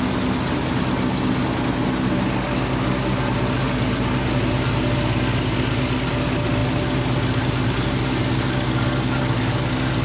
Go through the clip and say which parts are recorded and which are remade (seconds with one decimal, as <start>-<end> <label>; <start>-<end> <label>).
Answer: 0.0-10.0 recorded